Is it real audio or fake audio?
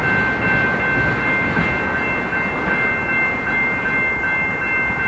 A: real